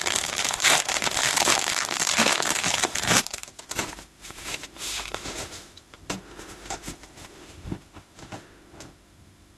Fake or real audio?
fake